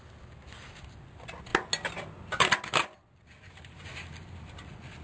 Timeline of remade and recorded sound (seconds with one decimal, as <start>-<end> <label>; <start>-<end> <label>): 0.0-5.0 recorded